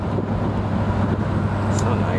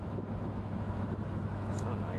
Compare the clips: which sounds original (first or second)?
first